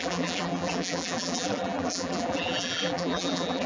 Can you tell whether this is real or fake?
fake